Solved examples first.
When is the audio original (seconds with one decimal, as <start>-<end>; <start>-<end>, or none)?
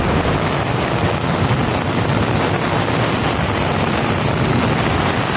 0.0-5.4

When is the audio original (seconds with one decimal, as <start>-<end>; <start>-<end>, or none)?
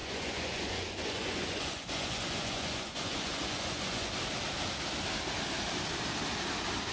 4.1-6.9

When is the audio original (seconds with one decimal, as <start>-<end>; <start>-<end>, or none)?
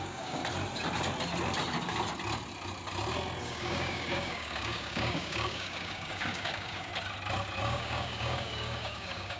0.4-3.4; 6.9-7.6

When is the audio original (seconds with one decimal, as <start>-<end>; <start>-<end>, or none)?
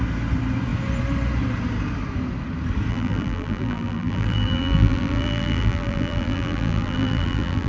0.0-2.9